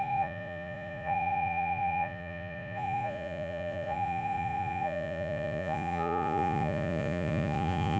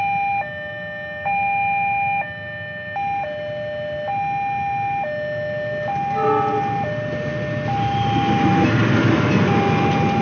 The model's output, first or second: first